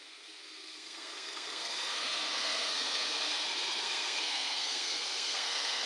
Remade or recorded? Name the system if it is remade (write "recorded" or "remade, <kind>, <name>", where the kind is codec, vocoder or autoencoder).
remade, codec, SNAC